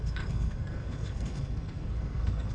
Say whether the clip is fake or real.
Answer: fake